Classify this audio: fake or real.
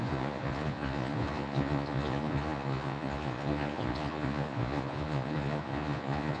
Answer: fake